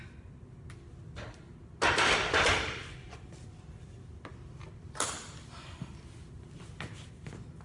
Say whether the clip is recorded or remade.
recorded